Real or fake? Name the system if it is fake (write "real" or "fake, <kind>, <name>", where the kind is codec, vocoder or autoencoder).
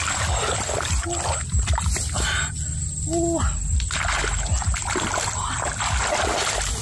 real